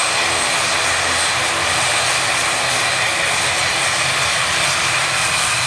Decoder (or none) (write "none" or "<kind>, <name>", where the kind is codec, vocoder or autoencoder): none